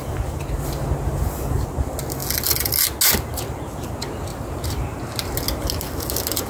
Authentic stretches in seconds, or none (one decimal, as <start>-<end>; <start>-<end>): 0.0-4.3; 5.0-6.5